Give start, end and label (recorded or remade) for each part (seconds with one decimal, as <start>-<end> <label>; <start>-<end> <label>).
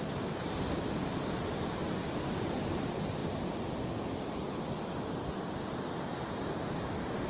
0.0-7.3 recorded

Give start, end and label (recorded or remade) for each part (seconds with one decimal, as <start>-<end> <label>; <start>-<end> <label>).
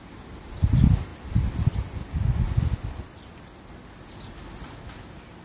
0.0-5.4 recorded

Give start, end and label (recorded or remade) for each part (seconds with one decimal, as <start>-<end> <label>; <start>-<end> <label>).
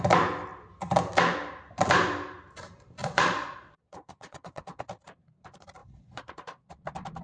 0.0-3.0 recorded; 3.0-4.8 remade; 4.8-5.8 recorded; 5.8-6.7 remade; 6.7-7.2 recorded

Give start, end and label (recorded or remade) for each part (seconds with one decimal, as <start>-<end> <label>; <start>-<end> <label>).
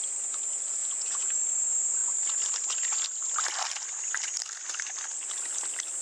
0.0-0.8 recorded; 0.8-1.3 remade; 1.3-6.0 recorded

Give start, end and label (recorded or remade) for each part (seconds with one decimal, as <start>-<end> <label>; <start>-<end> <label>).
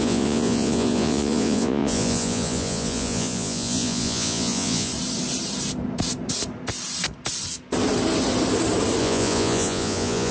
0.0-4.9 remade; 4.9-9.0 recorded; 9.0-10.3 remade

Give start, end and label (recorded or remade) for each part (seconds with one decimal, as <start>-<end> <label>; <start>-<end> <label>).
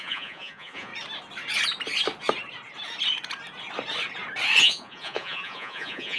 0.0-0.9 remade; 0.9-4.6 recorded; 4.6-6.2 remade